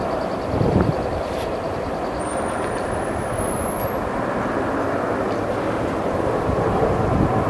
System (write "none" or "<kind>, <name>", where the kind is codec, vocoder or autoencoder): none